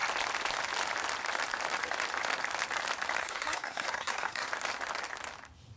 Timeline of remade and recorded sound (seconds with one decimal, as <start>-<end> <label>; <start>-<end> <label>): 0.0-3.2 recorded; 3.2-4.5 remade; 4.5-5.8 recorded